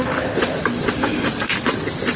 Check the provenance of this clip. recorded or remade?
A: recorded